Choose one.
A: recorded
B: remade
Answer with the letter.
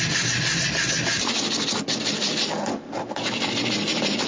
A